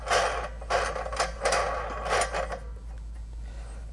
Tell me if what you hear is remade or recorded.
recorded